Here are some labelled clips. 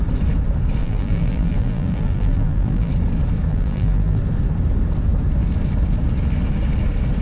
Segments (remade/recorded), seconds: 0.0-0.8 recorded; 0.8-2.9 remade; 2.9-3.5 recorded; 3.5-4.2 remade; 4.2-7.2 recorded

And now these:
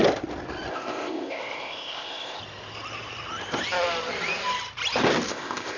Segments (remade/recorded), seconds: 0.0-0.7 recorded; 0.7-2.4 remade; 2.4-5.3 recorded; 5.3-5.8 remade

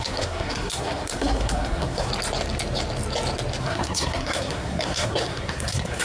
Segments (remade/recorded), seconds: 0.0-2.1 remade; 2.1-3.6 recorded; 3.6-6.0 remade